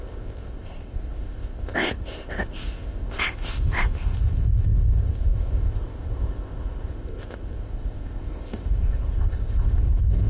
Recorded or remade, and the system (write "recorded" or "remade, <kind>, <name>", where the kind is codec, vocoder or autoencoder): remade, codec, ZipCodec